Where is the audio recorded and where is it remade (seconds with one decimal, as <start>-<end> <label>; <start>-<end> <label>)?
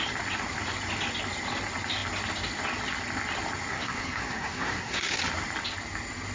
0.0-3.7 recorded; 3.7-5.2 remade; 5.2-6.3 recorded